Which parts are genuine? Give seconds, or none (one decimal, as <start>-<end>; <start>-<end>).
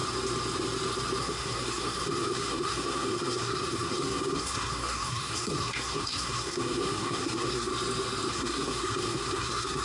0.0-1.2; 7.7-8.3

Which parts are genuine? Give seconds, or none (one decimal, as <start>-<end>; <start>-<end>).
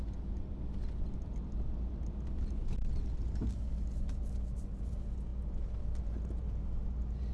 0.0-7.3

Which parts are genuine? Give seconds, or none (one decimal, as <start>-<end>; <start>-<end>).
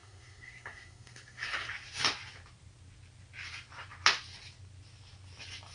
1.7-5.7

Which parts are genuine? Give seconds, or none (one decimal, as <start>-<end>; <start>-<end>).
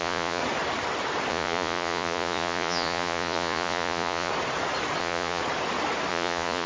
0.4-1.3; 4.3-5.0; 5.4-6.1